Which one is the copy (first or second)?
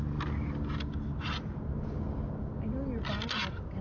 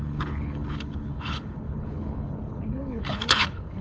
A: second